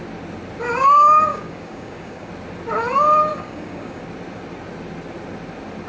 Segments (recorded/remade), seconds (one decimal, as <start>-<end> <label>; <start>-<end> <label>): 0.0-1.3 recorded; 1.3-2.3 remade; 2.3-3.3 recorded; 3.3-4.0 remade; 4.0-5.9 recorded